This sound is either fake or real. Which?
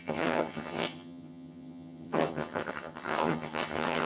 fake